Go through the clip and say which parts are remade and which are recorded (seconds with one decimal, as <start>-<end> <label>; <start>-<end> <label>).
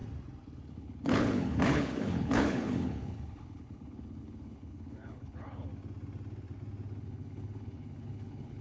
0.0-0.7 recorded; 0.7-5.7 remade; 5.7-7.0 recorded; 7.0-8.6 remade